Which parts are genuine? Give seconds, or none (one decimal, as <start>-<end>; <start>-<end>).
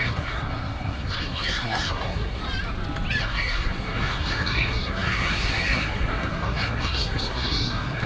2.4-3.2